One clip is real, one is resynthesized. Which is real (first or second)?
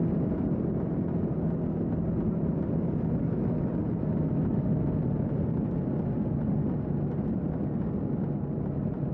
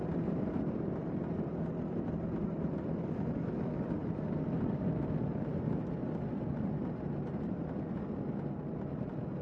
first